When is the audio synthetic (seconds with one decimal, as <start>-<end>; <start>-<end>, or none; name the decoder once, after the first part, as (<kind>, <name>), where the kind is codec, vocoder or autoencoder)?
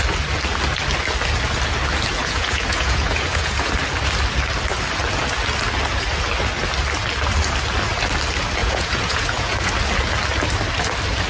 2.2-3.7 (vocoder, Vocos); 8.6-9.7